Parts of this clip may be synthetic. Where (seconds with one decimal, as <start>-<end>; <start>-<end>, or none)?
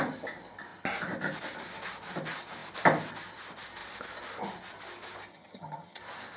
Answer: 5.3-6.0